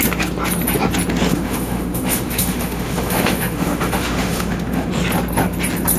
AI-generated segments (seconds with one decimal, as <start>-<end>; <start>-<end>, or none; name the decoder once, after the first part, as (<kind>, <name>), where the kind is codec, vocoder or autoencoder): 1.3-4.9 (autoencoder, DAC-VAE)

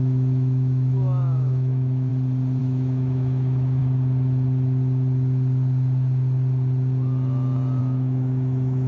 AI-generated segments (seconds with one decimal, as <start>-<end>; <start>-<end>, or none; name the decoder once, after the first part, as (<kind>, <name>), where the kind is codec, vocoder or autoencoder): 0.0-2.1 (autoencoder, DAC-VAE); 2.6-3.8; 7.8-8.9

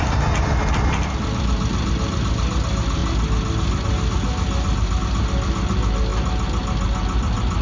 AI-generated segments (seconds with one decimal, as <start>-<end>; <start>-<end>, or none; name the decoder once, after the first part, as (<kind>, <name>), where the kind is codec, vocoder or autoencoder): none

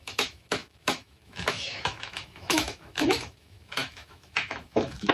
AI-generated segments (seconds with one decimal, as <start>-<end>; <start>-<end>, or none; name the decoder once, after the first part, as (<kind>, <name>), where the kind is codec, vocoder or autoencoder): 0.0-5.1 (autoencoder, DAC-VAE)

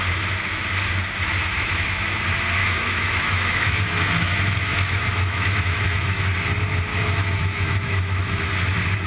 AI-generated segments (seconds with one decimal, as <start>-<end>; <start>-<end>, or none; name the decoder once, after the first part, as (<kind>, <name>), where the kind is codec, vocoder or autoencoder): 1.4-2.2 (autoencoder, DAC-VAE); 2.6-6.2; 6.9-8.5